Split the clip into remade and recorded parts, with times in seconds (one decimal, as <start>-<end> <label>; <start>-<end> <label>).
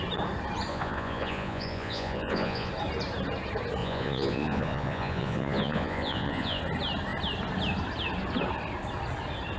0.0-0.7 recorded; 0.7-2.7 remade; 2.7-3.8 recorded; 3.8-6.6 remade; 6.6-9.6 recorded